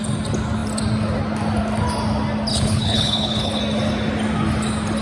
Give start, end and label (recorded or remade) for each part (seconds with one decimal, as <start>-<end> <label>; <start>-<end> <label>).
0.0-2.5 recorded; 2.5-3.6 remade; 3.6-5.0 recorded